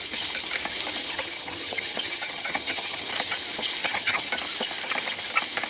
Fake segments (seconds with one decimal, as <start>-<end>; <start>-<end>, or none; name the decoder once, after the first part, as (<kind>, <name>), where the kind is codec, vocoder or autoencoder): 1.0-3.0 (vocoder, HiFi-GAN); 3.8-4.3